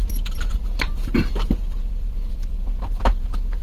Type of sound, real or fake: fake